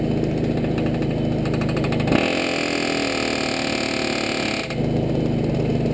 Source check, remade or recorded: recorded